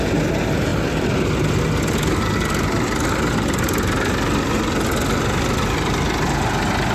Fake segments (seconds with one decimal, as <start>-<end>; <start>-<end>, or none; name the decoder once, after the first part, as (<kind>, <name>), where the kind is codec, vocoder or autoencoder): none